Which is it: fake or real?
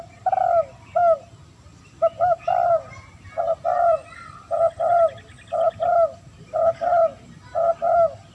real